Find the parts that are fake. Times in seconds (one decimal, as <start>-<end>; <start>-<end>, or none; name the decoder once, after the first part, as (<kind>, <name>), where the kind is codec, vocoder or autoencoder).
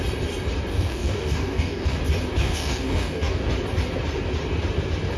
0.7-2.0 (codec, DAC); 2.4-3.5